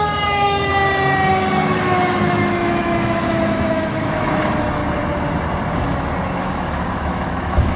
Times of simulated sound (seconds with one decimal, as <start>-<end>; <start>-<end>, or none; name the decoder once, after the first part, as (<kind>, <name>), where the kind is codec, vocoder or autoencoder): 0.0-0.7 (autoencoder, DAC-VAE); 1.3-4.8; 6.4-7.8